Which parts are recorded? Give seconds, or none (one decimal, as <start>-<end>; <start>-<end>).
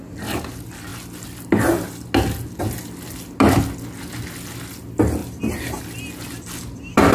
0.0-5.2; 5.8-7.1